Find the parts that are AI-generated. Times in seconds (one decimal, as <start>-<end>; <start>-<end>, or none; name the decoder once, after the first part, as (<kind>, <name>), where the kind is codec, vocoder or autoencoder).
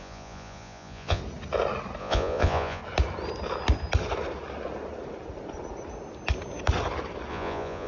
0.0-1.2 (vocoder, Vocos); 2.0-2.8; 7.3-7.9